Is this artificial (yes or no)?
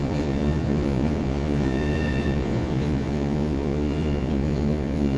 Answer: yes